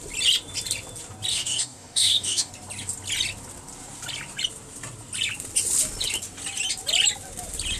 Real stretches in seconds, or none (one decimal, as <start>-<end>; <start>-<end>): 0.0-1.3; 2.5-7.8